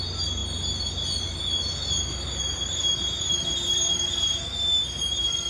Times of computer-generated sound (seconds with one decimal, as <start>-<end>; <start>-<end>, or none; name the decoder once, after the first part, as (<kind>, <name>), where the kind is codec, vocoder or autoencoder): none